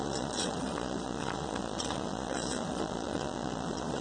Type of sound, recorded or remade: remade